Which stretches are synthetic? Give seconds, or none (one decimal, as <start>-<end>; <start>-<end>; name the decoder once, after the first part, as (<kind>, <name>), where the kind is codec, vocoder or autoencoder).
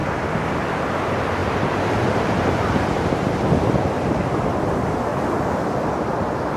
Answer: 0.7-5.1 (vocoder, BigVGAN v2); 5.8-6.6